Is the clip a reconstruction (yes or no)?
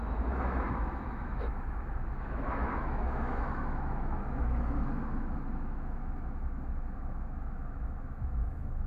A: yes